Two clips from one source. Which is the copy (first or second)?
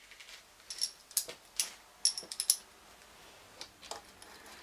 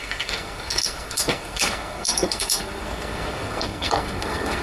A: second